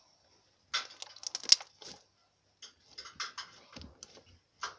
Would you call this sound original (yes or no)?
yes